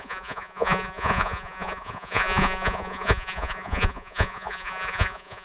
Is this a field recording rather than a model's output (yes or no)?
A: no